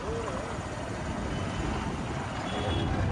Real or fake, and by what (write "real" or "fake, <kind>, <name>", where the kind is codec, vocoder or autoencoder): real